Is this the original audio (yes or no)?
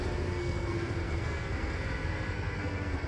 no